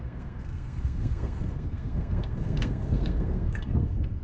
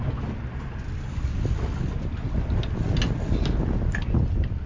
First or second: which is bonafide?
second